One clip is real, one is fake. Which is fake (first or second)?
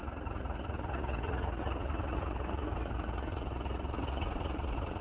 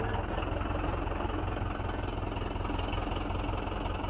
first